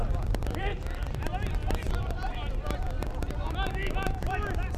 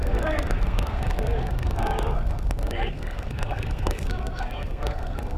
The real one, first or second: first